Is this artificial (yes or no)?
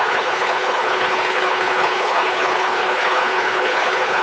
yes